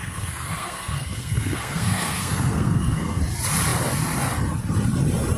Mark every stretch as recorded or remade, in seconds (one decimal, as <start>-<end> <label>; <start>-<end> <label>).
0.0-3.2 remade; 3.2-5.4 recorded

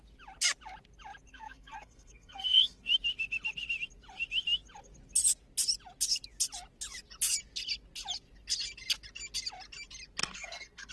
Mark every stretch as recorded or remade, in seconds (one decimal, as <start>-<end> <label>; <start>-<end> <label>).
0.0-1.3 recorded; 1.3-2.9 remade; 2.9-10.2 recorded; 10.2-10.9 remade

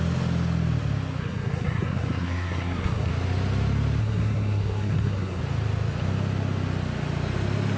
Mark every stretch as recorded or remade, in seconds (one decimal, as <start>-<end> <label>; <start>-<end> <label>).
0.0-1.2 recorded; 1.2-3.1 remade; 3.1-4.0 recorded; 4.0-5.4 remade; 5.4-7.8 recorded

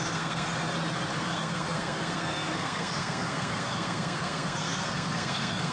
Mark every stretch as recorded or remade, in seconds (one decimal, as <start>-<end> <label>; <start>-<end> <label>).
0.0-0.5 remade; 0.5-1.2 recorded; 1.2-5.7 remade

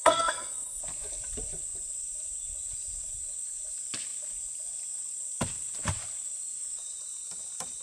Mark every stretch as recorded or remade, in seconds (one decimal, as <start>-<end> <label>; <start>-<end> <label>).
0.0-0.8 remade; 0.8-7.8 recorded

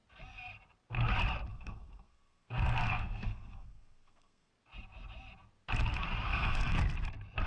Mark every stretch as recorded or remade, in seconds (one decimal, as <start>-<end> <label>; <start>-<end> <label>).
0.0-1.5 recorded; 1.5-4.5 remade; 4.5-6.3 recorded; 6.3-6.8 remade; 6.8-7.5 recorded

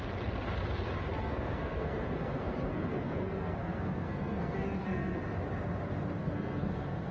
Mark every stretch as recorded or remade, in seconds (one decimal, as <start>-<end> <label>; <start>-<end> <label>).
0.0-1.2 recorded; 1.2-5.2 remade; 5.2-6.2 recorded; 6.2-7.1 remade